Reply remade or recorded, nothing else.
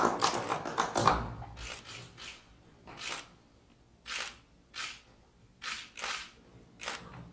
recorded